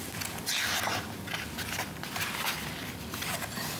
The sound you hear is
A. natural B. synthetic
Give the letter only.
A